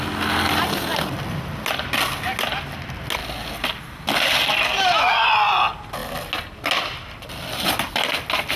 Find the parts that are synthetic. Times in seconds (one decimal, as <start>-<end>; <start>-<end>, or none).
none